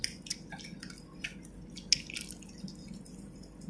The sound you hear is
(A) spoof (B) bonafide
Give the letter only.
B